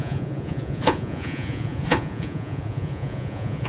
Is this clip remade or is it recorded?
remade